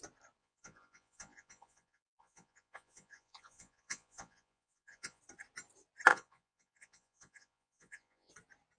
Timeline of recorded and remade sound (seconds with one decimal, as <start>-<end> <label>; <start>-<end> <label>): 0.0-0.4 recorded; 0.4-5.2 remade; 5.2-6.1 recorded; 6.1-8.3 remade; 8.3-8.8 recorded